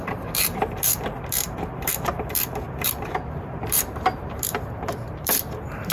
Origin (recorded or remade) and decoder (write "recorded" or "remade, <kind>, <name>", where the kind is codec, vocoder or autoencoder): remade, vocoder, BigVGAN v2